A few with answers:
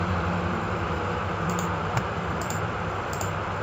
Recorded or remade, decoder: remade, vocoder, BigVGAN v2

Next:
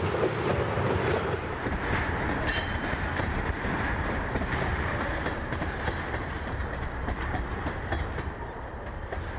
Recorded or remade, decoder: remade, vocoder, BigVGAN v2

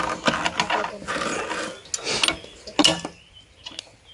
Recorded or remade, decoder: recorded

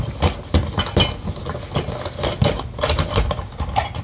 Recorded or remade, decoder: recorded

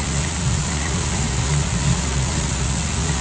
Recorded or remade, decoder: remade, vocoder, Vocos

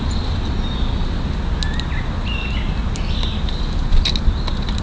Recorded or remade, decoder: recorded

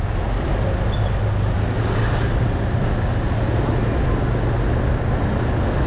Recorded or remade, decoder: recorded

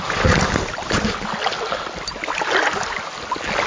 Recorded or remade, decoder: recorded